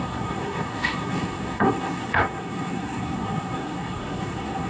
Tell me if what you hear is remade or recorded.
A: remade